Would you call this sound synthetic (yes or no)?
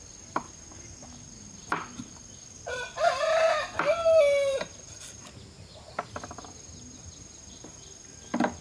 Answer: no